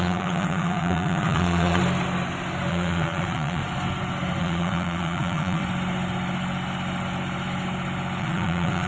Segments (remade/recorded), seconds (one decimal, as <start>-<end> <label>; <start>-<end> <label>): 0.0-1.8 remade; 1.8-2.7 recorded; 2.7-3.6 remade; 3.6-4.4 recorded; 4.4-5.6 remade; 5.6-8.2 recorded; 8.2-8.9 remade